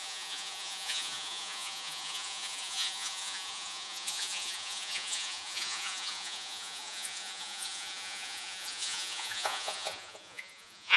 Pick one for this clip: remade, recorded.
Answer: remade